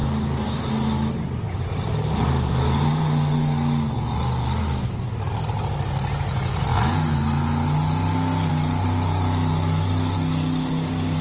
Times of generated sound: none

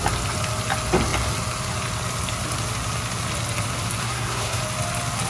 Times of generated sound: 4.0-4.6 (codec, SNAC)

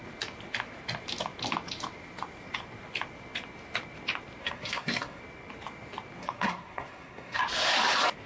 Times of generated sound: 4.4-5.2 (codec, SNAC); 6.2-7.4

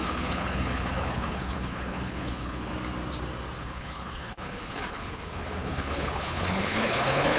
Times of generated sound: 0.0-2.7 (codec, HILCodec); 3.6-7.4

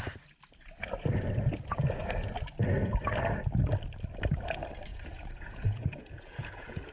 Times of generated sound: 4.9-6.9 (vocoder, Vocos)

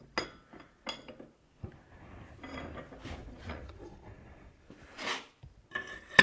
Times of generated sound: 3.2-4.5 (vocoder, Vocos)